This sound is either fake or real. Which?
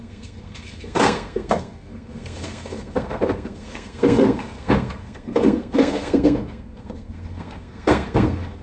fake